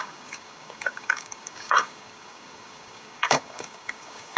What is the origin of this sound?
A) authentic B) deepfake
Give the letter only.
B